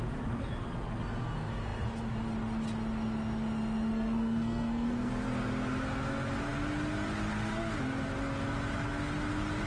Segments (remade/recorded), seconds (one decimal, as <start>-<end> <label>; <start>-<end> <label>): 0.0-3.9 recorded; 3.9-5.1 remade; 5.1-9.7 recorded